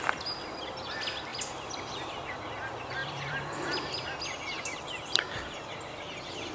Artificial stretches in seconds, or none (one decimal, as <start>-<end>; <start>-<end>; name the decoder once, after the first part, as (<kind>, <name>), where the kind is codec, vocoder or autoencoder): 1.3-2.2 (vocoder, BigVGAN v2); 3.0-4.0